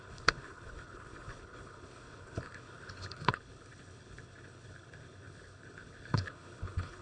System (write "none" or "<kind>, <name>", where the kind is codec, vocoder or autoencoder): codec, HILCodec